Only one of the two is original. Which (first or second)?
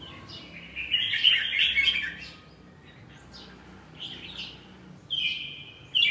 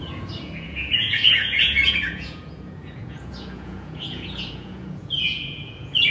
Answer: first